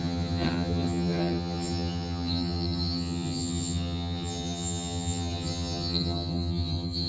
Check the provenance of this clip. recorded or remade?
remade